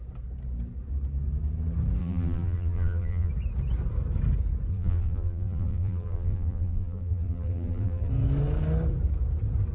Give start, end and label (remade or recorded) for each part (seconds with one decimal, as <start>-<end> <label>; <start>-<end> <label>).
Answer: 0.0-2.0 recorded; 2.0-3.3 remade; 3.3-4.7 recorded; 4.7-8.1 remade; 8.1-9.7 recorded